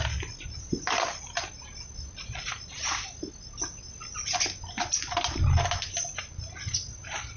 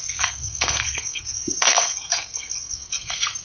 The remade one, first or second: second